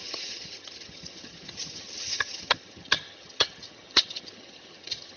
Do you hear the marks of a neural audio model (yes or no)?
yes